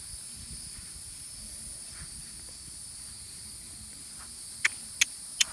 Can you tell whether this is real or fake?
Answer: real